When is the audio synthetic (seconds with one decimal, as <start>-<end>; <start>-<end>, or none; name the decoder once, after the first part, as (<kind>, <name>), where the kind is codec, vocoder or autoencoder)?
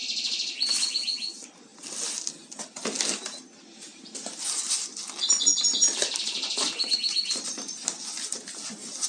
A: none